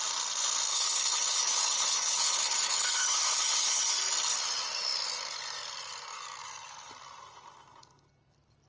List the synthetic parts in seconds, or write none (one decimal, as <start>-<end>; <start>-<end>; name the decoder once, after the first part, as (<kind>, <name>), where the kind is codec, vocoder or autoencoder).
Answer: 0.7-3.9 (codec, HILCodec)